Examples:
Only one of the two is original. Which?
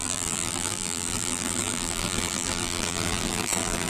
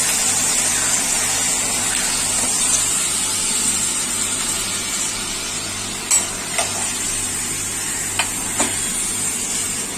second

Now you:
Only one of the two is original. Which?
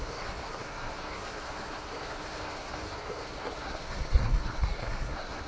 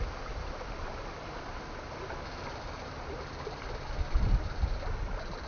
second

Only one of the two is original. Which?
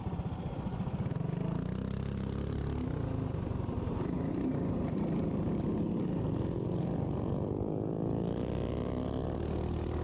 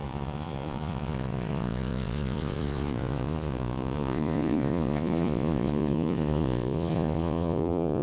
first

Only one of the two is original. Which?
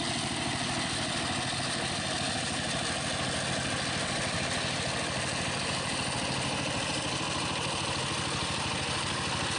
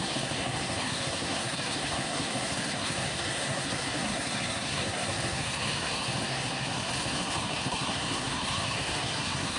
first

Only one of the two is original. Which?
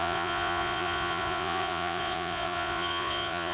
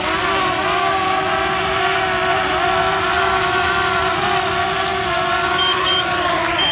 second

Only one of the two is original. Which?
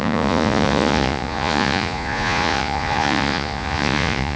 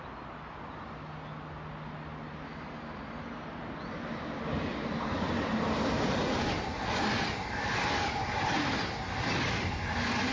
second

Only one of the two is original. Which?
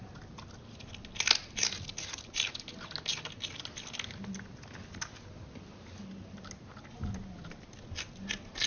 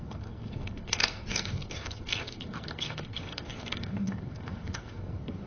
first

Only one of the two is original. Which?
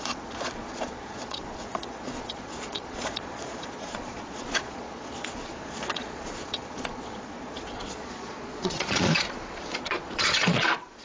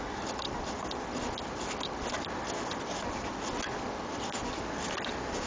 second